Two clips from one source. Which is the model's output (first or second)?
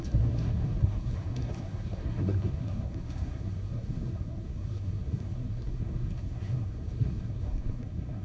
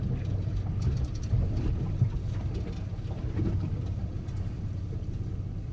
first